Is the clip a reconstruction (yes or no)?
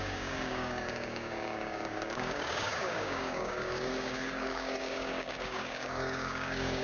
yes